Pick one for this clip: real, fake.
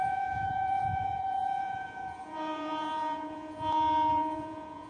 fake